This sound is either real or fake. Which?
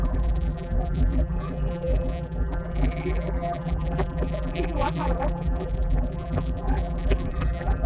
fake